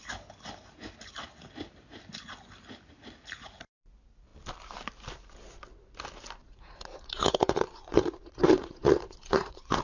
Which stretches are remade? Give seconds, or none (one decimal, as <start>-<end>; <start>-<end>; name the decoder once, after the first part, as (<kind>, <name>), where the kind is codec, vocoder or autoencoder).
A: 6.4-9.8 (vocoder, Vocos)